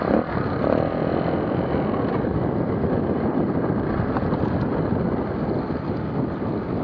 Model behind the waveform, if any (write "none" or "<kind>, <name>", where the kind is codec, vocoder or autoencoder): none